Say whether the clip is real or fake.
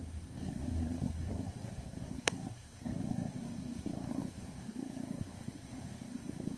fake